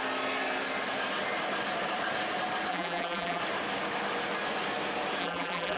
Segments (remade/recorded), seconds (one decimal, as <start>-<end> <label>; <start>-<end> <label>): 0.0-2.7 recorded; 2.7-3.4 remade; 3.4-5.2 recorded; 5.2-5.8 remade